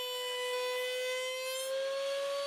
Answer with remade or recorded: recorded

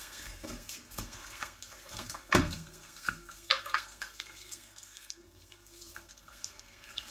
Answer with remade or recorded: remade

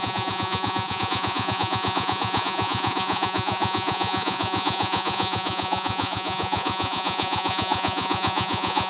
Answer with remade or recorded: remade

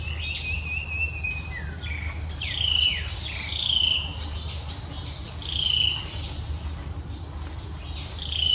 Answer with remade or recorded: recorded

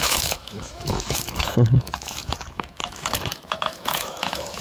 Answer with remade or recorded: remade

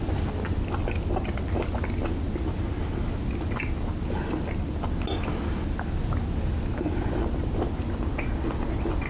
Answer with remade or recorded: recorded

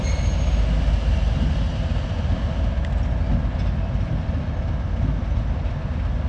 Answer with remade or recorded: recorded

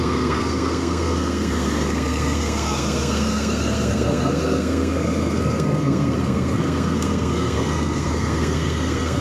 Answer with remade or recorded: remade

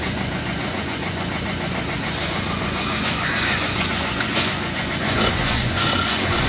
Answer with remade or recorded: remade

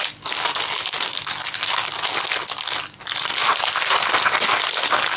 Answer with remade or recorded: recorded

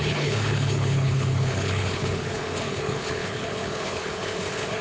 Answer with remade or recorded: remade